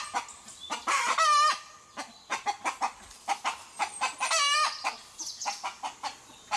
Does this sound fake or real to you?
real